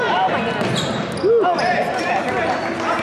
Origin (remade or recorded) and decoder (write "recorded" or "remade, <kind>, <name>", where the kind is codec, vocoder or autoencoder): recorded